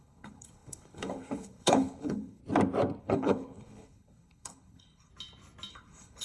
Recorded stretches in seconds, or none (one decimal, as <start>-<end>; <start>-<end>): 2.4-3.0; 5.1-5.7